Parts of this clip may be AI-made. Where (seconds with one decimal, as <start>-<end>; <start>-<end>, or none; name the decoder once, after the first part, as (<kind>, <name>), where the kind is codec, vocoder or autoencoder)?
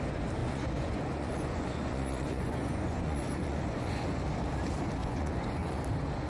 0.4-4.2 (vocoder, Vocos); 5.0-5.8